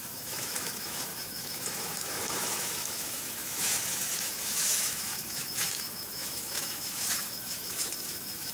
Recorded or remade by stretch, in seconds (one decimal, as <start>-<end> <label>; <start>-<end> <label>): 0.0-8.5 remade